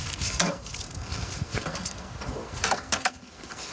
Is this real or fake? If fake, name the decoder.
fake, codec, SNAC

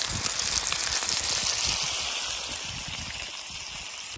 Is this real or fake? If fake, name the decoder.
real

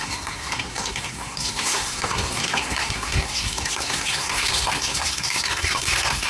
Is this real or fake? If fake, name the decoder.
fake, codec, SNAC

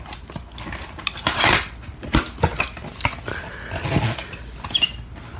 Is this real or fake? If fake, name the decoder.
real